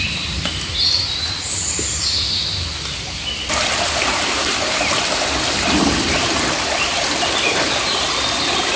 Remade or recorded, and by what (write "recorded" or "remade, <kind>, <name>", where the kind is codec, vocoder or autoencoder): recorded